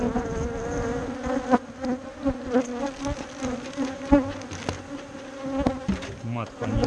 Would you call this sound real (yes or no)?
yes